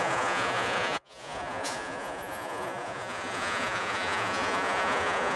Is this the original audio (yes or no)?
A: no